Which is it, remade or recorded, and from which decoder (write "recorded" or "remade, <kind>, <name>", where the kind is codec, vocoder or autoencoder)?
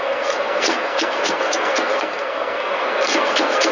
remade, codec, SNAC